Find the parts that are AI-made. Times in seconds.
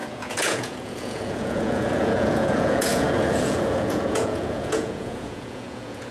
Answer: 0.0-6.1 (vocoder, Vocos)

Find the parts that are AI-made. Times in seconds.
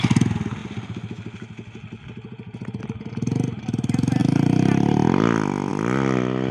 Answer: none